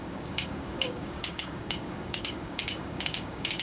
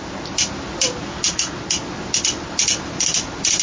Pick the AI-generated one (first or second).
first